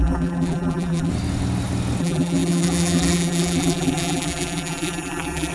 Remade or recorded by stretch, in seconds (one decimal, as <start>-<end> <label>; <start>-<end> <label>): 0.0-1.1 remade; 1.1-2.0 recorded; 2.0-5.5 remade